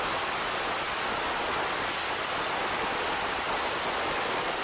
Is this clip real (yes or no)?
yes